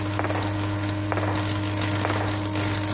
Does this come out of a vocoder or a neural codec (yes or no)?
no